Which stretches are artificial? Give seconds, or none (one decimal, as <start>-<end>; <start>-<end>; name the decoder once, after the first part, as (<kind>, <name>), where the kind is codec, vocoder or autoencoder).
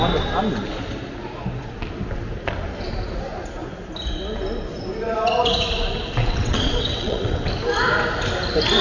6.2-7.5 (vocoder, WaveNeXt)